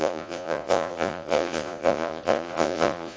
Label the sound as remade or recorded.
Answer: remade